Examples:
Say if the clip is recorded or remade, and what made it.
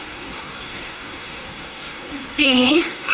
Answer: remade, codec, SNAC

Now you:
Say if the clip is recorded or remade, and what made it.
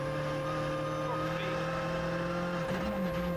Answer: recorded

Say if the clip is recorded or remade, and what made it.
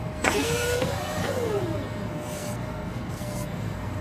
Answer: remade, codec, SNAC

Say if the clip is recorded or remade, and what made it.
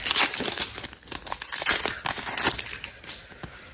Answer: recorded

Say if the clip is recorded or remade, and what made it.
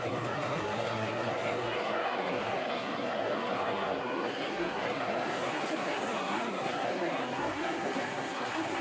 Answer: remade, codec, SNAC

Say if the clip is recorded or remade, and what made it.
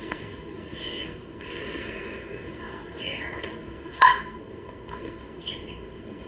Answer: remade, codec, SNAC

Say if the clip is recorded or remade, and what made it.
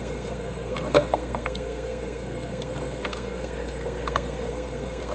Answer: remade, codec, SNAC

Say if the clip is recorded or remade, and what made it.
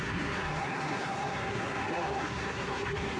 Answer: remade, codec, SNAC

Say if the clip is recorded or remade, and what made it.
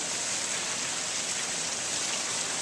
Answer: recorded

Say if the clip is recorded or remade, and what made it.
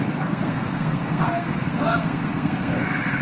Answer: remade, codec, SNAC